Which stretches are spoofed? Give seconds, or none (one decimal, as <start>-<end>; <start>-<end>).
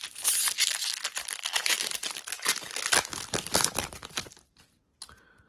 1.6-2.8